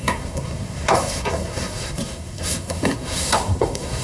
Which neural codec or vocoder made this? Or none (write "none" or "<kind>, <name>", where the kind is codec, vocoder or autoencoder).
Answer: codec, SNAC